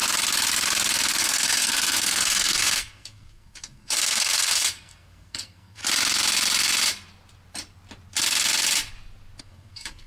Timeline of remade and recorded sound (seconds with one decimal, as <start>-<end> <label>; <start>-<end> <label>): 0.0-1.2 recorded; 1.2-5.8 remade; 5.8-9.4 recorded; 9.4-10.1 remade